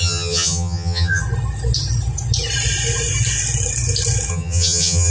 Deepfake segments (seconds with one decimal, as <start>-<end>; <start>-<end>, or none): 0.0-1.2; 4.3-5.1